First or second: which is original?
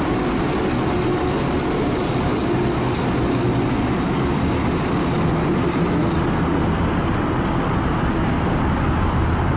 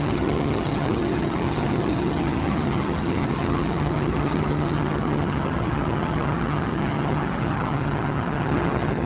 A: first